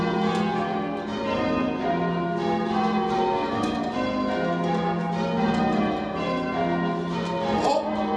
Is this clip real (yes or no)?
yes